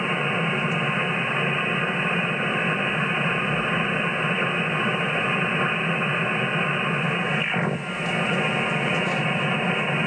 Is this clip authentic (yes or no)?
yes